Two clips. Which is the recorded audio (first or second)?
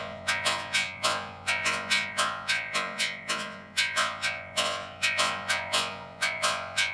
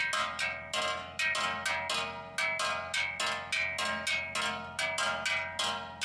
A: second